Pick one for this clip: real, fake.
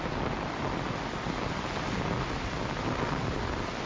real